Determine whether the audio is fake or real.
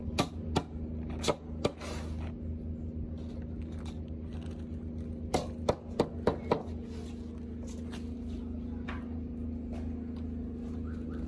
real